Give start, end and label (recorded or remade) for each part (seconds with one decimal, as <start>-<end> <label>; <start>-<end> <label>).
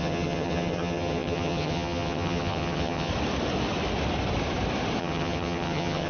0.0-3.1 remade; 3.1-5.0 recorded; 5.0-6.1 remade